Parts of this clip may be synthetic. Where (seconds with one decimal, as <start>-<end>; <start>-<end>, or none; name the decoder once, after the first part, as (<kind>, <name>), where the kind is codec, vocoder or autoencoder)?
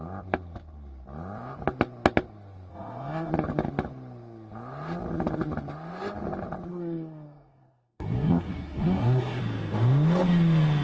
2.7-3.3 (codec, SNAC); 6.7-9.4